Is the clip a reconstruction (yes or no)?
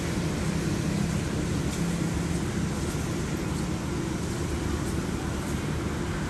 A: no